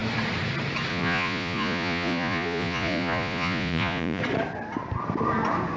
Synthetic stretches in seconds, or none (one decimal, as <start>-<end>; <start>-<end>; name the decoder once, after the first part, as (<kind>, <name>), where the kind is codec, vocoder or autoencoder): 0.9-4.2 (vocoder, Vocos)